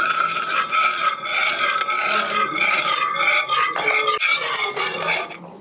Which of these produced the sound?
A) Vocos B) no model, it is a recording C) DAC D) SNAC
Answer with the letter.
B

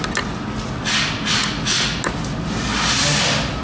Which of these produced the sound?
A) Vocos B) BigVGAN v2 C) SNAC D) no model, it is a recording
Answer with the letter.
D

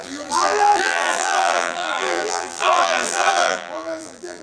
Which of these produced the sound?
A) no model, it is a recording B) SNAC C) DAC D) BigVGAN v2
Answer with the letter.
D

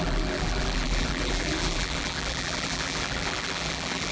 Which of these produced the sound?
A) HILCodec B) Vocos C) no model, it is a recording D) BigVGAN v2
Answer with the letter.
D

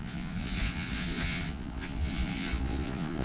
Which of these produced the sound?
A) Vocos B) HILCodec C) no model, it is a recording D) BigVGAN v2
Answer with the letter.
A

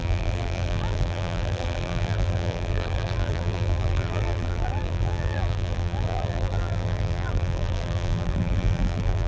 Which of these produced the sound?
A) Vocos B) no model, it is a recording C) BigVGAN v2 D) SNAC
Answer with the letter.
C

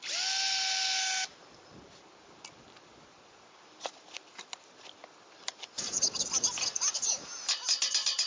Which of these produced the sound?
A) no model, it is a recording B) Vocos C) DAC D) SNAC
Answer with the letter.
A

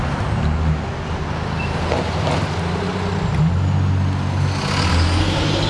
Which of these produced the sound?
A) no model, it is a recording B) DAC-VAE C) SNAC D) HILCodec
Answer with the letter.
A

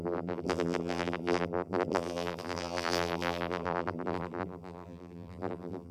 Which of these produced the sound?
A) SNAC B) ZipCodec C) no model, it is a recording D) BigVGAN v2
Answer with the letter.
D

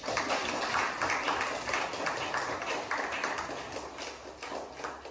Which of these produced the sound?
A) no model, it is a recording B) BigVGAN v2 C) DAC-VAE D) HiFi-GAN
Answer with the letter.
A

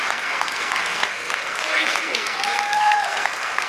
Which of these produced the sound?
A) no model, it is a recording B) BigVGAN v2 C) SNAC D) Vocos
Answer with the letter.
C